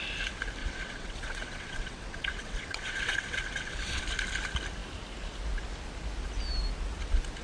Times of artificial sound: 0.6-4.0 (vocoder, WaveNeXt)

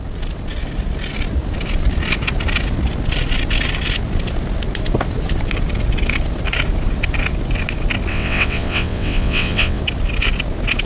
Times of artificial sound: 8.1-9.8 (vocoder, WaveNeXt)

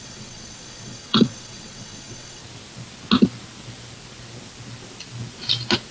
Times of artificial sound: 0.0-2.4 (vocoder, WaveNeXt)

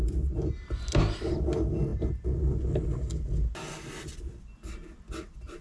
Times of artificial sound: none

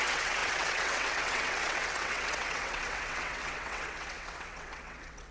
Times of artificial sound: 0.0-5.3 (vocoder, WaveNeXt)